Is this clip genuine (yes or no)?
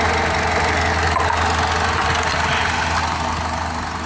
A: yes